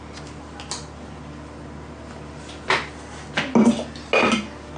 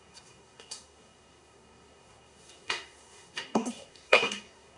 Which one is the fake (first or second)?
second